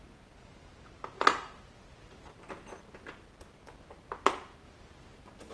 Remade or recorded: recorded